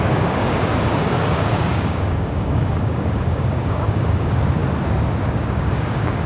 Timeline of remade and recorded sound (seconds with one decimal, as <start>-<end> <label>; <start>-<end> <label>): 0.0-4.6 remade; 4.6-5.3 recorded; 5.3-6.3 remade